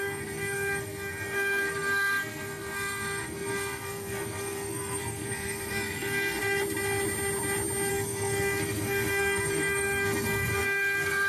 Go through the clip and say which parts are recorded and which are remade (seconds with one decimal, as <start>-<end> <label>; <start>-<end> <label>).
0.0-6.4 remade; 6.4-7.9 recorded; 7.9-11.3 remade